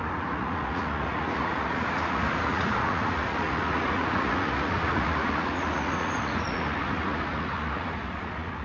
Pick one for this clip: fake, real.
fake